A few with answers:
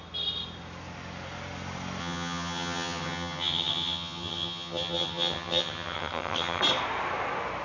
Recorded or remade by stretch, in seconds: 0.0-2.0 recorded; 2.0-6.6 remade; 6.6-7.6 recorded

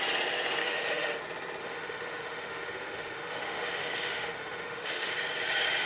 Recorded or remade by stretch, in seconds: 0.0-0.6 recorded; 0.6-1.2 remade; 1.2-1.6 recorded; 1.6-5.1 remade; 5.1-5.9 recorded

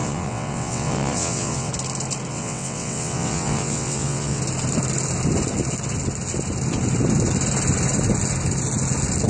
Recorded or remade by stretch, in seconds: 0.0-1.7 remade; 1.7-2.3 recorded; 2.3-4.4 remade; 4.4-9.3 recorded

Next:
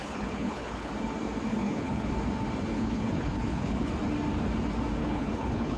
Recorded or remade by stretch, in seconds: 0.0-0.9 remade; 0.9-1.5 recorded; 1.5-2.1 remade; 2.1-2.7 recorded; 2.7-3.9 remade; 3.9-5.0 recorded; 5.0-5.8 remade

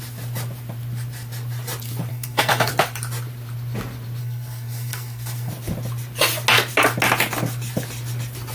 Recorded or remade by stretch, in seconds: 0.0-2.1 recorded; 2.1-2.7 remade; 2.7-4.2 recorded; 4.2-5.5 remade; 5.5-8.5 recorded